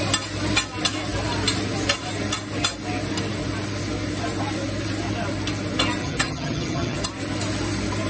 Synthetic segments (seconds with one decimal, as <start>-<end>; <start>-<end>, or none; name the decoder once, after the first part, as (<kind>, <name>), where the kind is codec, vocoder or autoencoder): 6.0-7.0 (vocoder, HiFi-GAN)